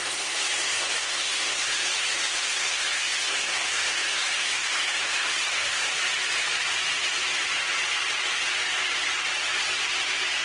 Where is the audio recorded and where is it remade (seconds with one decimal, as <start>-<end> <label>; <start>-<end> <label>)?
0.0-5.9 remade; 5.9-10.4 recorded